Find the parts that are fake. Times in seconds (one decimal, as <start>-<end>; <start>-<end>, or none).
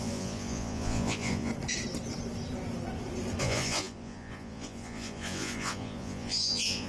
0.0-1.5; 3.4-6.9